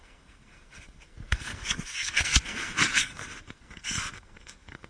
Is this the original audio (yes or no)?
no